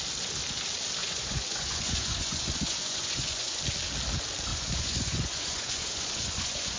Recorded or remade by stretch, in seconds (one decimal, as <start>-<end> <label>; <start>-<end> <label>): 0.0-1.0 recorded; 1.0-3.6 remade; 3.6-4.5 recorded; 4.5-6.8 remade